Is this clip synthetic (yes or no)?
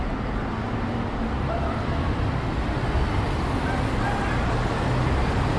no